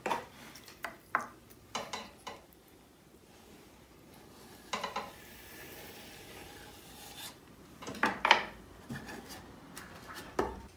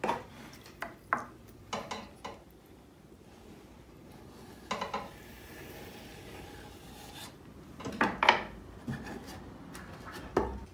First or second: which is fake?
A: first